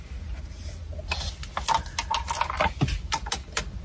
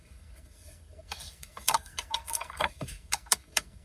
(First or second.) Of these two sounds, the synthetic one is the second